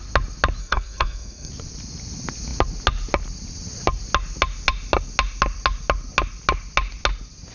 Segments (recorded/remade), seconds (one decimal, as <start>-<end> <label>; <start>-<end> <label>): 0.0-0.6 recorded; 0.6-1.5 remade; 1.5-7.5 recorded